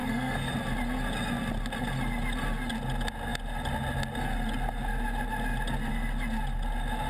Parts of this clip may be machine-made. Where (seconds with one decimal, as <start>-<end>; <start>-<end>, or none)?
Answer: 0.0-0.5